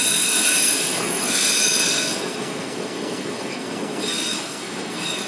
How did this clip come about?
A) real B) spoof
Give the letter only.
B